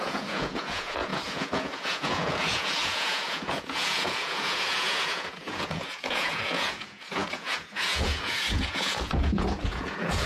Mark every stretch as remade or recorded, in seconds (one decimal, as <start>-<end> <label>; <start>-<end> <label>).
0.0-10.3 remade